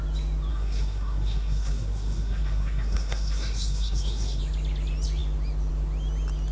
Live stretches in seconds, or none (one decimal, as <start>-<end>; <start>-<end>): 0.0-0.5; 4.4-6.5